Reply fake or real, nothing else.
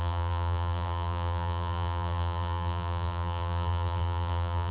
fake